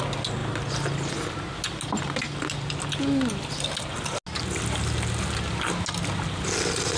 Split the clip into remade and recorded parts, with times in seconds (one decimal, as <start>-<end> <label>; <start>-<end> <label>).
0.0-7.0 recorded